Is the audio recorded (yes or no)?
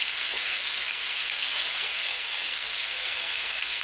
no